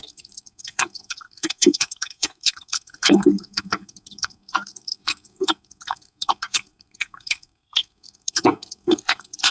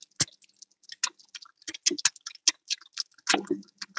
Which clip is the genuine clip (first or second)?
second